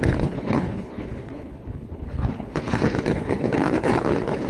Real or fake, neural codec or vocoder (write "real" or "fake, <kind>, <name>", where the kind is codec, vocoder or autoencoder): fake, codec, HILCodec